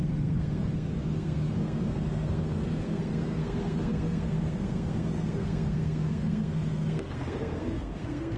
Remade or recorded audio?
remade